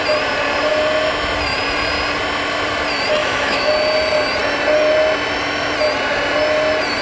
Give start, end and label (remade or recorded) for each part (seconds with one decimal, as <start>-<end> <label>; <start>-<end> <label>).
0.0-3.2 recorded; 3.2-3.7 remade; 3.7-7.0 recorded